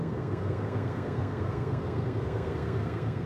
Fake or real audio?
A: fake